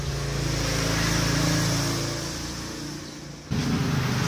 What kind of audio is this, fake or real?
real